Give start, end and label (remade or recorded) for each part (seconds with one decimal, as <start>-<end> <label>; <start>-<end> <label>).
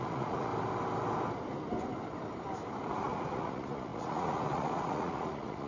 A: 0.0-0.5 remade; 0.5-2.9 recorded; 2.9-5.7 remade